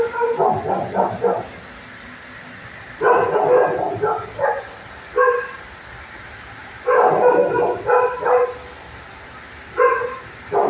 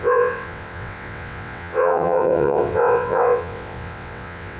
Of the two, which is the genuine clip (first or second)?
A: first